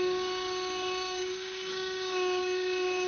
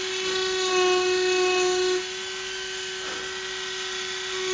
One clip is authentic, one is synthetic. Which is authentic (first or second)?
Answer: second